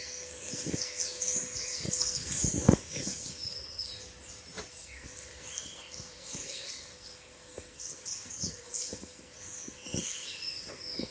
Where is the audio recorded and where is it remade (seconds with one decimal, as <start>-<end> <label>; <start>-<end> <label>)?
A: 0.0-3.9 remade; 3.9-4.7 recorded; 4.7-11.1 remade